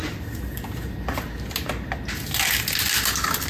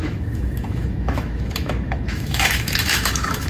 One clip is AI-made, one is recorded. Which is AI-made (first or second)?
second